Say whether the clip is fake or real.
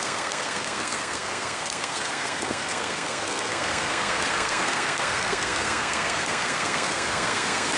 fake